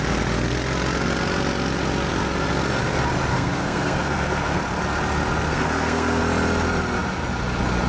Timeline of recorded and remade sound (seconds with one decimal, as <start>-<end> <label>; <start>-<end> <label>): 0.0-3.3 recorded; 3.3-4.6 remade; 4.6-5.5 recorded; 5.5-6.2 remade; 6.2-7.9 recorded

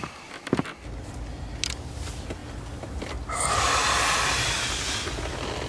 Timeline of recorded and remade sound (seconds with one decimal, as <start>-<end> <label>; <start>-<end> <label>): 0.0-5.7 recorded